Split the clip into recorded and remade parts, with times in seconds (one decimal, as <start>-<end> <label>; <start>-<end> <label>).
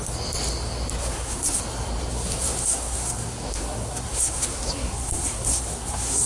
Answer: 0.0-1.0 recorded; 1.0-1.6 remade; 1.6-2.1 recorded; 2.1-6.3 remade